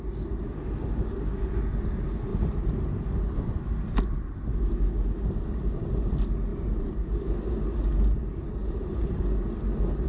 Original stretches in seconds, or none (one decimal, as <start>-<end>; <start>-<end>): 0.0-2.3; 3.0-6.5; 7.5-8.6; 9.2-10.1